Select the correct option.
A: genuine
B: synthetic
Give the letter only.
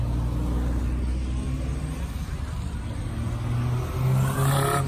A